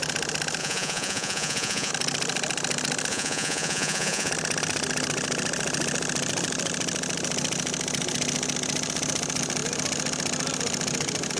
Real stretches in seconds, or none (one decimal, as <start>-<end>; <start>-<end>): 0.0-0.6; 1.9-3.1; 4.3-11.4